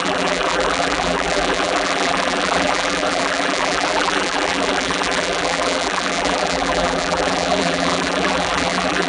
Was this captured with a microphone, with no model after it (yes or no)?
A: no